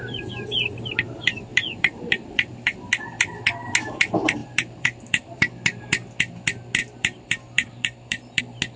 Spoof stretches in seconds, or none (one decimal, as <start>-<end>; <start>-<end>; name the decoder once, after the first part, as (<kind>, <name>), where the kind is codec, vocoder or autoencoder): 1.5-2.8 (vocoder, BigVGAN v2); 4.4-5.5; 6.8-8.4